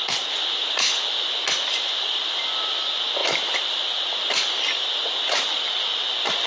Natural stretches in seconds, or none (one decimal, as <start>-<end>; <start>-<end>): 0.0-6.5